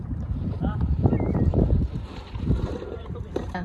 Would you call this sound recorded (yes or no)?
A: no